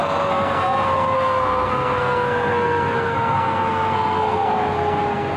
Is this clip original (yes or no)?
no